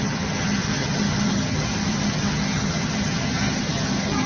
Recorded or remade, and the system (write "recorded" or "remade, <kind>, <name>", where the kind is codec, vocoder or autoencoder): remade, vocoder, HiFi-GAN